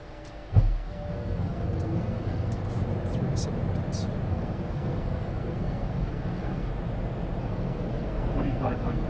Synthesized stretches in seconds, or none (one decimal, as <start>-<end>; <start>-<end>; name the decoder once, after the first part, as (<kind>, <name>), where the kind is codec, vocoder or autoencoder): 0.0-2.6 (codec, SNAC); 4.3-6.7; 7.4-9.1